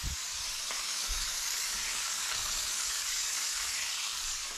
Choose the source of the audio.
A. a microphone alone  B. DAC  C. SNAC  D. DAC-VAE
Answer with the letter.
B